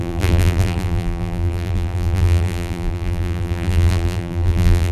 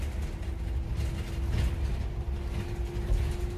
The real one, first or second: second